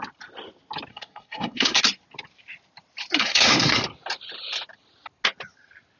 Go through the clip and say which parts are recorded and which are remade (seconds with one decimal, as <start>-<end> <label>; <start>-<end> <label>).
0.0-0.9 recorded; 0.9-1.8 remade; 1.8-3.2 recorded; 3.2-3.8 remade; 3.8-6.0 recorded